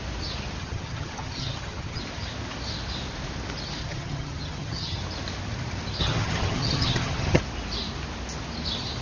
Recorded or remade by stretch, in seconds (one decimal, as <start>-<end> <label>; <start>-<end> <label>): 0.0-0.6 recorded; 0.6-2.0 remade; 2.0-3.8 recorded; 3.8-5.0 remade; 5.0-6.0 recorded; 6.0-7.4 remade; 7.4-9.0 recorded